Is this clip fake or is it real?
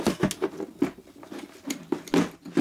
real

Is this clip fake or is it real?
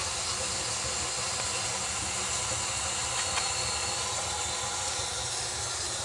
real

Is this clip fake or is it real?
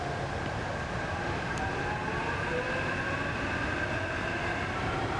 real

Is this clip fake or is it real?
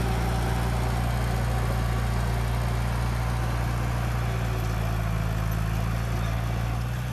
real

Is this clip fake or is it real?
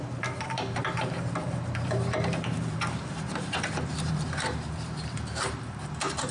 fake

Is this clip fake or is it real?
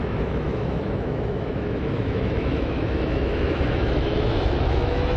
fake